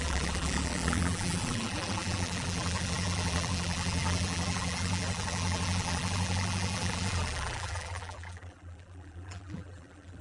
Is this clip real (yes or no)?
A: no